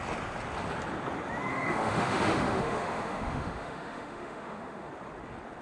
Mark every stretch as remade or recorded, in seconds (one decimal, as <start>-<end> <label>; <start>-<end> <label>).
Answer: 0.0-1.5 recorded; 1.5-4.9 remade; 4.9-5.6 recorded